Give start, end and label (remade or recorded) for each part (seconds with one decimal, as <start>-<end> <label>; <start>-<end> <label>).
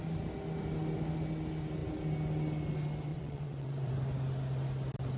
0.0-3.1 recorded; 3.1-3.9 remade; 3.9-5.2 recorded